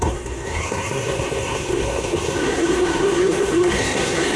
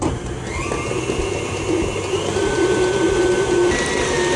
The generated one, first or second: first